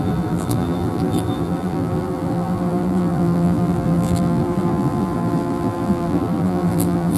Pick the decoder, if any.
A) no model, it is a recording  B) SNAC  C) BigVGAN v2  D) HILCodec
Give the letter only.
C